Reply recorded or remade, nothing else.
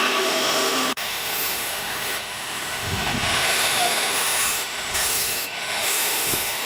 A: remade